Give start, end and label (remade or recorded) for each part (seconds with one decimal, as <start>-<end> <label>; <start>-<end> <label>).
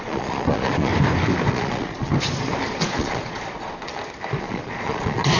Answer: 0.0-0.9 remade; 0.9-1.5 recorded; 1.5-2.1 remade; 2.1-2.7 recorded; 2.7-3.9 remade; 3.9-4.4 recorded; 4.4-5.4 remade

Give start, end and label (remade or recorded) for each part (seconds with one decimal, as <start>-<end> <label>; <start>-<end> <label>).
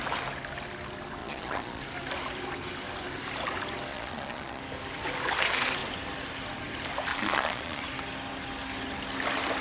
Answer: 0.0-1.2 recorded; 1.2-1.8 remade; 1.8-3.9 recorded; 3.9-4.6 remade; 4.6-7.1 recorded; 7.1-7.8 remade; 7.8-9.6 recorded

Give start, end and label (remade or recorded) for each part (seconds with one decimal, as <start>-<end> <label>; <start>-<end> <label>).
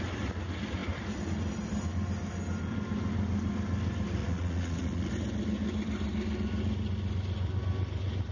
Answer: 0.0-4.2 recorded; 4.2-5.1 remade; 5.1-8.3 recorded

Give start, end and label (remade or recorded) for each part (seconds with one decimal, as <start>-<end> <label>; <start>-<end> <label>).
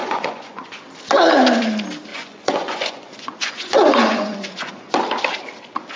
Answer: 0.0-0.8 remade; 0.8-2.1 recorded; 2.1-5.0 remade; 5.0-6.0 recorded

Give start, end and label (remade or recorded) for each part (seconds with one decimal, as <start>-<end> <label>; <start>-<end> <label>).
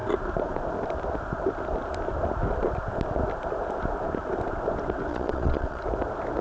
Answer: 0.0-5.1 recorded; 5.1-5.8 remade; 5.8-6.4 recorded